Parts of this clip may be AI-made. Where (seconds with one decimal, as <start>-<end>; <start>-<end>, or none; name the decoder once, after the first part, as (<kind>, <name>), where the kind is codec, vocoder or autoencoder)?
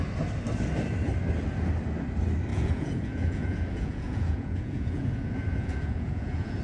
2.5-6.6 (vocoder, Vocos)